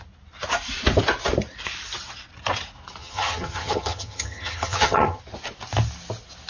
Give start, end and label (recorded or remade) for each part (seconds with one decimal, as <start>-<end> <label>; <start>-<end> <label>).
0.0-3.0 recorded; 3.0-5.2 remade; 5.2-6.5 recorded